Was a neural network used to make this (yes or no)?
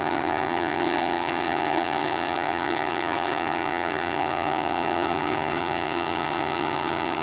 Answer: yes